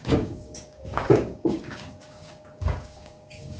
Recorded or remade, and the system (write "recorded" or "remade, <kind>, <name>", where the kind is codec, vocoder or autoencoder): remade, codec, DAC